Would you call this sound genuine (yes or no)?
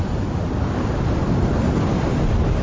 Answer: yes